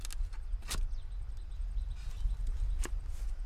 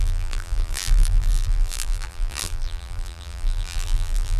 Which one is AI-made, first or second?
second